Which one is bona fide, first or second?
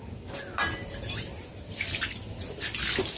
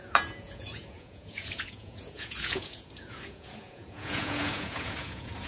first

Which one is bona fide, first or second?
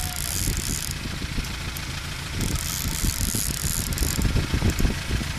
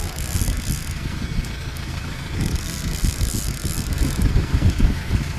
first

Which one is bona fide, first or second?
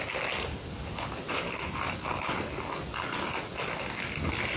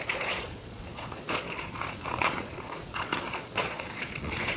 first